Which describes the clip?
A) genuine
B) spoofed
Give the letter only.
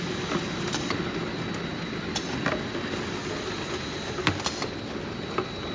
A